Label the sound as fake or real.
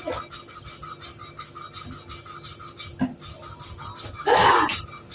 real